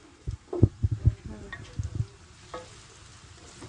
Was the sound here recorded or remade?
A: recorded